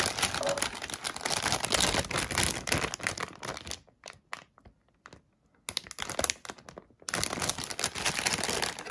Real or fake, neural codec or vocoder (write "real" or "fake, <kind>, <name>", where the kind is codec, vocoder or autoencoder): real